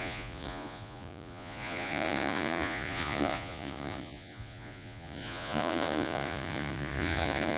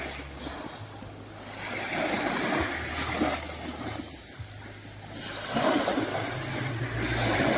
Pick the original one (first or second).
second